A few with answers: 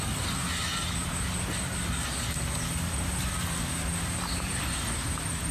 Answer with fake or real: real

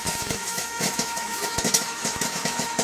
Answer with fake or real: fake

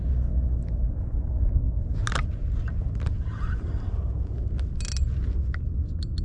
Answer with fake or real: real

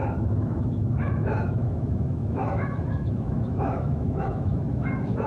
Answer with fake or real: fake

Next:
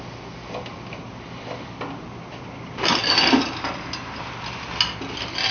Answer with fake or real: real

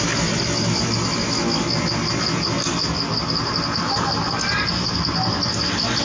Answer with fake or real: real